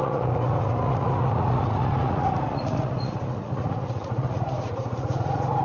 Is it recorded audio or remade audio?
remade